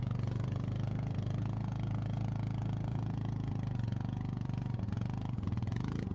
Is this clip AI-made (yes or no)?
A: yes